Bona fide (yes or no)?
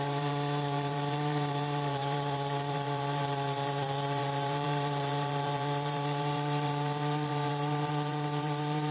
no